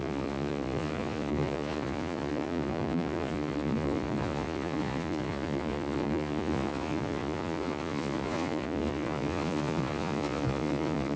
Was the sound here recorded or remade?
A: remade